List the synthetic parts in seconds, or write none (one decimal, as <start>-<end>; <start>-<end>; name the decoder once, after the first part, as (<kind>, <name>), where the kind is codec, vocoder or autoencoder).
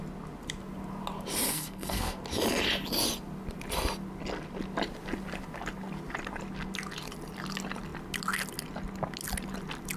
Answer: 1.5-2.2 (codec, SNAC)